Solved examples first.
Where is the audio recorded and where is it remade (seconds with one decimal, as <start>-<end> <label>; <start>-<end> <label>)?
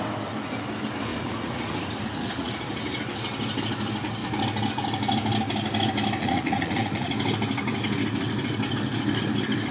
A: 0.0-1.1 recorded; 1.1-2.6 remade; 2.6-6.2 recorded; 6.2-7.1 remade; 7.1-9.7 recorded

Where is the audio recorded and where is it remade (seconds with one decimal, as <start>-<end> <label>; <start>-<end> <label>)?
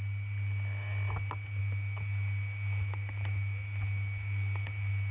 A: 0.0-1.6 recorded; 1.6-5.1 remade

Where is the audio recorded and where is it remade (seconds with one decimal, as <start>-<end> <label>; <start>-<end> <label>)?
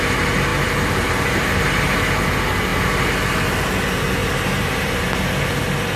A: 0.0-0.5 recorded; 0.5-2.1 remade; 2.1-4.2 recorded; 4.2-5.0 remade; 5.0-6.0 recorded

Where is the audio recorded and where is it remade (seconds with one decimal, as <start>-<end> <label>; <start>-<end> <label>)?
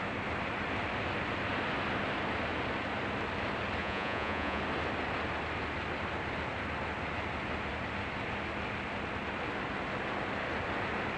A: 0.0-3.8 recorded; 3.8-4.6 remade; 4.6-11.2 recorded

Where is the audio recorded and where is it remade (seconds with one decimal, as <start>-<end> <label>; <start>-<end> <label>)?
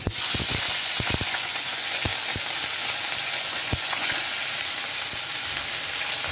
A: 0.0-2.1 remade; 2.1-3.2 recorded; 3.2-4.4 remade; 4.4-6.3 recorded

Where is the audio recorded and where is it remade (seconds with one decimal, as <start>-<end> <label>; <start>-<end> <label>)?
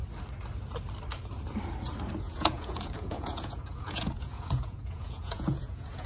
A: 0.0-2.2 recorded; 2.2-6.1 remade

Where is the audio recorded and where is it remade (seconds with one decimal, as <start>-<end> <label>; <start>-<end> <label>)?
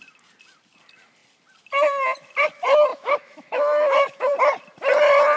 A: 0.0-2.9 recorded; 2.9-4.3 remade; 4.3-5.4 recorded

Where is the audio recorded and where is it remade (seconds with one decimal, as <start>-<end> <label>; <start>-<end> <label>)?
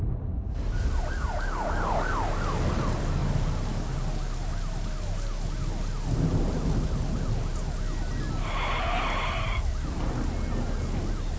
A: 0.0-11.4 recorded